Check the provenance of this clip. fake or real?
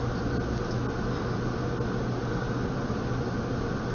real